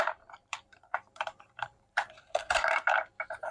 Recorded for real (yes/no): no